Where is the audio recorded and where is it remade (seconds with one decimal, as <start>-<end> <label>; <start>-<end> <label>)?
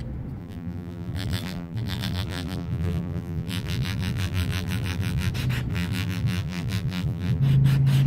0.0-0.4 recorded; 0.4-5.3 remade; 5.3-5.7 recorded; 5.7-7.4 remade; 7.4-8.1 recorded